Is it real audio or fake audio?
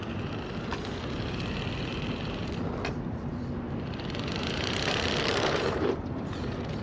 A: real